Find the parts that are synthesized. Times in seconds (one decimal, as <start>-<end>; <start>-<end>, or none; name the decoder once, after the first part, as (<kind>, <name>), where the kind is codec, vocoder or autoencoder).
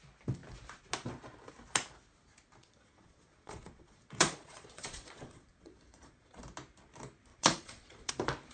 2.6-6.4 (vocoder, Vocos); 7.3-8.1